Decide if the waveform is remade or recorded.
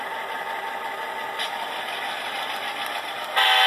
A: recorded